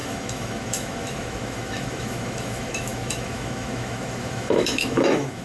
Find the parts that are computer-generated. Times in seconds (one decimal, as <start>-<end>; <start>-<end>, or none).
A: 0.0-5.4